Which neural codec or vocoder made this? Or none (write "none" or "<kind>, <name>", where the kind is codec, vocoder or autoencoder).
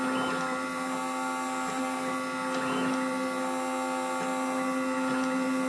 none